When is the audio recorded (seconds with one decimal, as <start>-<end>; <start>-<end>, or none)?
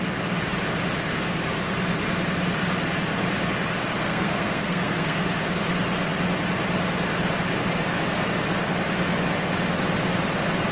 0.0-4.0; 5.2-10.7